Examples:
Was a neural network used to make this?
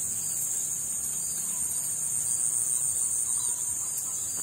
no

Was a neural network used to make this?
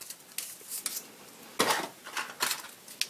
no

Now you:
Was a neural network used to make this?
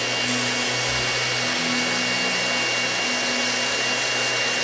no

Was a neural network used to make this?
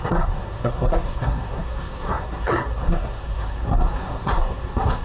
yes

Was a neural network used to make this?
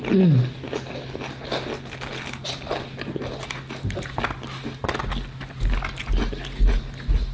no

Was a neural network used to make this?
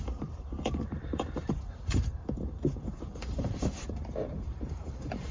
yes